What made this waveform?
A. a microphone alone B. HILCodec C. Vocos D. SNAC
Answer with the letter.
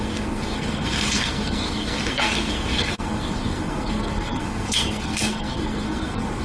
D